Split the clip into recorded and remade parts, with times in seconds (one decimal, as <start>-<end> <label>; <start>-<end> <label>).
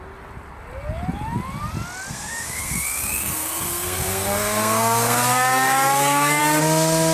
0.0-2.1 recorded; 2.1-6.4 remade; 6.4-7.1 recorded